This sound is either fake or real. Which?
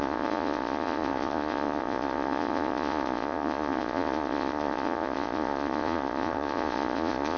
fake